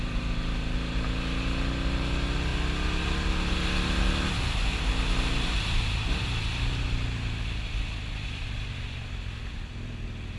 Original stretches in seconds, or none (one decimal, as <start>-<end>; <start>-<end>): 0.0-10.4